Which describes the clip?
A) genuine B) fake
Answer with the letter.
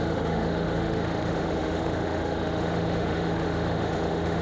B